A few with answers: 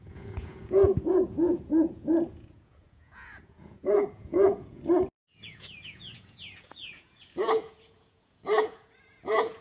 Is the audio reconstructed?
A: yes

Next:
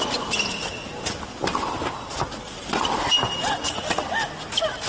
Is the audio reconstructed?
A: no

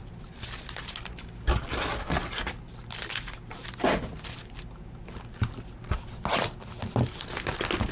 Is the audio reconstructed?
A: no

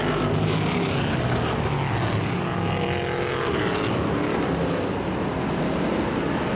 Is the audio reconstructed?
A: no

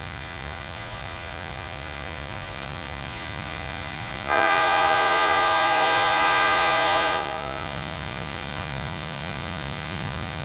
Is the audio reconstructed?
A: yes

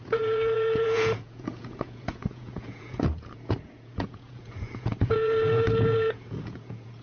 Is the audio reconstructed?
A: yes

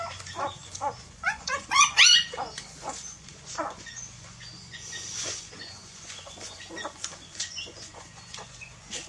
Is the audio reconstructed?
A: yes